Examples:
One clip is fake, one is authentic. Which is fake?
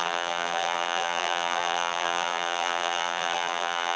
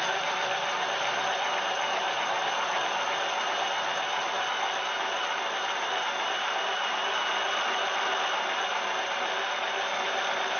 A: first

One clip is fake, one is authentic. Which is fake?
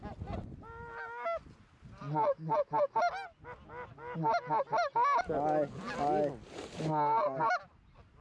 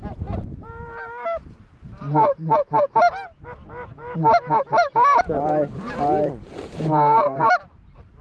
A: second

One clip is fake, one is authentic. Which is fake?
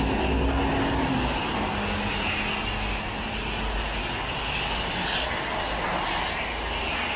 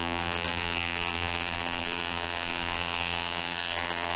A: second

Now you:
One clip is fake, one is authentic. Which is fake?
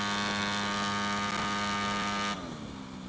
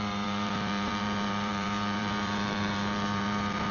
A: second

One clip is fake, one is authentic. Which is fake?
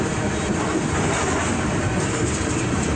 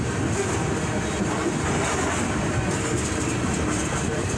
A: first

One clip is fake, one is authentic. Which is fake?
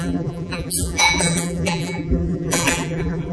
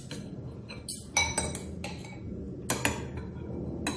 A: first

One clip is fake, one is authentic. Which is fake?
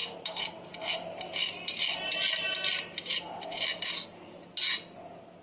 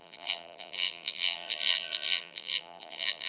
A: second